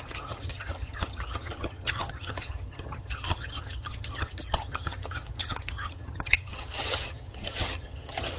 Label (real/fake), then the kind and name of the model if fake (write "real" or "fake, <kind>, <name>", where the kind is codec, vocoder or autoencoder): fake, vocoder, HiFi-GAN